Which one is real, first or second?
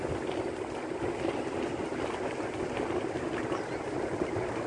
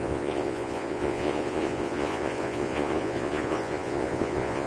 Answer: first